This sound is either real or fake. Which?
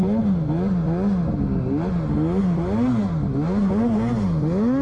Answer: real